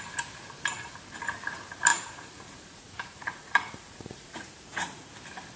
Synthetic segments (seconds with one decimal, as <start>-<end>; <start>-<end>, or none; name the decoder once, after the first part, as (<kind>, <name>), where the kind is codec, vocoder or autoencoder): 1.9-5.1 (vocoder, Vocos)